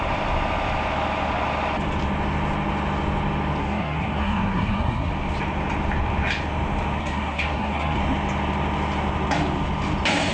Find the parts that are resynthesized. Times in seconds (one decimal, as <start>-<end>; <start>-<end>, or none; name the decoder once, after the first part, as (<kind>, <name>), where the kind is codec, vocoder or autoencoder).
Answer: 3.6-5.1 (codec, SNAC); 7.0-8.0